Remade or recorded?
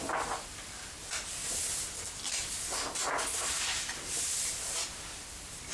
recorded